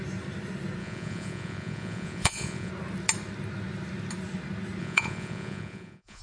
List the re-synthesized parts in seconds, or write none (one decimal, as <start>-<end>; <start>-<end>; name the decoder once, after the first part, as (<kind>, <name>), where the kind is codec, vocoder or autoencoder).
0.8-2.7 (vocoder, Vocos); 4.8-6.2

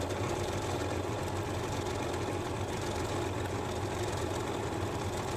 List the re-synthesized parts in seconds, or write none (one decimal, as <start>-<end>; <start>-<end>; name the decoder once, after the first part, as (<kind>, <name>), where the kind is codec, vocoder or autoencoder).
none

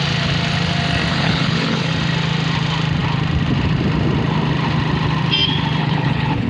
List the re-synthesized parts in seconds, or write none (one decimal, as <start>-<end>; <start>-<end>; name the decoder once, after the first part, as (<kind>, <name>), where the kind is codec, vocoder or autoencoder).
1.1-1.9 (codec, HILCodec); 5.8-6.5

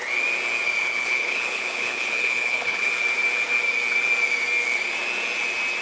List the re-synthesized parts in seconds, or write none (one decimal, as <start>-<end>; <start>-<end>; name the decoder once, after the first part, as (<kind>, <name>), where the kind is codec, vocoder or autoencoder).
0.8-2.9 (codec, HILCodec)

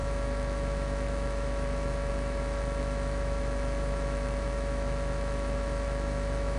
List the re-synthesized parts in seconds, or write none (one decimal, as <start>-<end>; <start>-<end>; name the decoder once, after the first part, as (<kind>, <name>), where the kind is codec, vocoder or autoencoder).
0.0-6.6 (autoencoder, DAC-VAE)

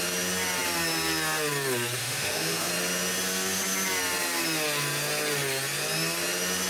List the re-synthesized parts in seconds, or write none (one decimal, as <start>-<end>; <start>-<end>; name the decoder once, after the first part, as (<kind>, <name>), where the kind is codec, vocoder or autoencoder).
2.0-2.7 (autoencoder, DAC-VAE)